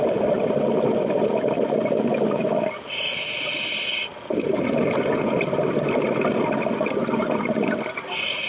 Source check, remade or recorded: recorded